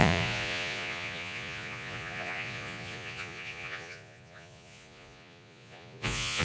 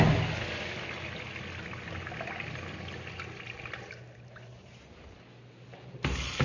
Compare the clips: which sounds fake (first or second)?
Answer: first